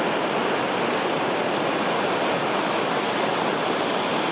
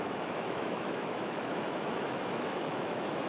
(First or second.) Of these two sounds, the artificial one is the second